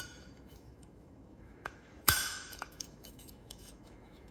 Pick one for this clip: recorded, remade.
remade